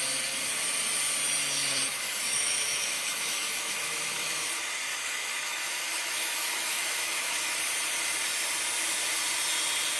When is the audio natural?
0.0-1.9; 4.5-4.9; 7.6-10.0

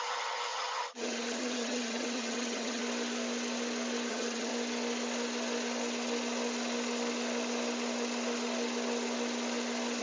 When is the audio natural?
2.8-4.1; 4.5-10.0

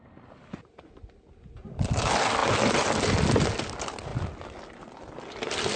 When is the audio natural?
0.0-5.8

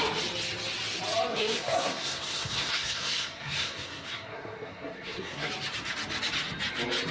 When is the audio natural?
0.0-1.3; 5.5-7.1

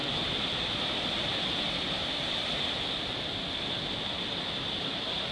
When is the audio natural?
0.0-5.3

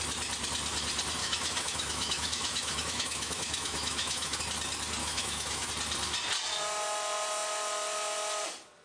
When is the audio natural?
0.0-1.2; 4.4-5.0; 5.7-8.8